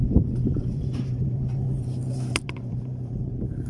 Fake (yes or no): yes